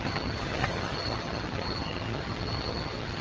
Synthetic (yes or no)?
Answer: yes